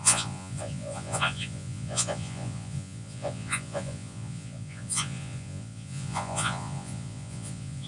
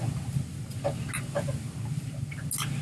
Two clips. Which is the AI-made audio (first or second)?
first